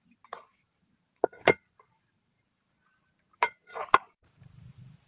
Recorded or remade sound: remade